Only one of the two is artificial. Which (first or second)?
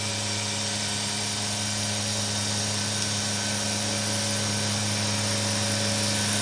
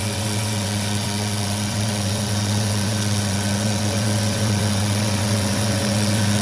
second